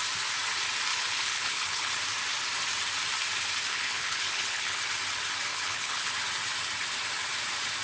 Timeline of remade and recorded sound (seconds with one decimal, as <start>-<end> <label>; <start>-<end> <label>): 0.0-0.9 recorded; 0.9-1.9 remade; 1.9-3.7 recorded; 3.7-4.8 remade; 4.8-5.5 recorded; 5.5-6.1 remade; 6.1-7.8 recorded